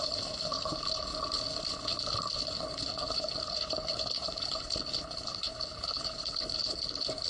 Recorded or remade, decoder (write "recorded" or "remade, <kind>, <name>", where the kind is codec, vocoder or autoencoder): remade, codec, HILCodec